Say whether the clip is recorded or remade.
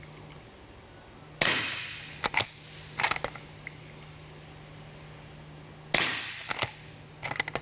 recorded